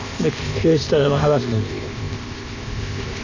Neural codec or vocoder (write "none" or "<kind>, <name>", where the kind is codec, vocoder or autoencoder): codec, ZipCodec